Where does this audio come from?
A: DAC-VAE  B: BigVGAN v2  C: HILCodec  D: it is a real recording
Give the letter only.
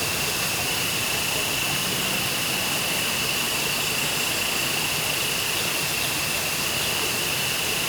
B